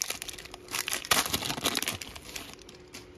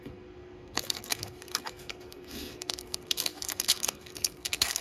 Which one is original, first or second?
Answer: first